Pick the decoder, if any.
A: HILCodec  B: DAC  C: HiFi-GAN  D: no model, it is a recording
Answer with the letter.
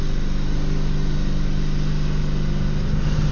D